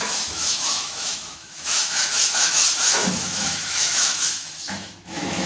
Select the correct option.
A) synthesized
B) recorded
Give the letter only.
A